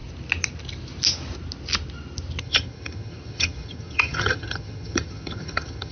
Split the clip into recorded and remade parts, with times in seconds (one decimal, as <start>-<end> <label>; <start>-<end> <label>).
0.0-2.4 recorded; 2.4-5.9 remade